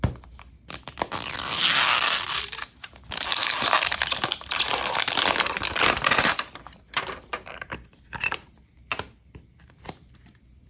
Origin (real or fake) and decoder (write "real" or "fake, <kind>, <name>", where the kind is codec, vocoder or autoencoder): real